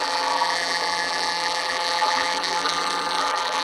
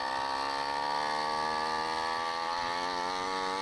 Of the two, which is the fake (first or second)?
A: first